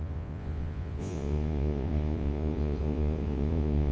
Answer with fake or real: fake